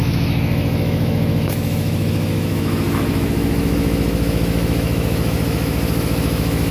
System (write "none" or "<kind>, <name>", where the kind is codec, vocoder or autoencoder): autoencoder, DAC-VAE